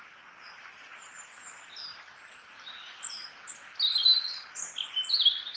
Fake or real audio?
real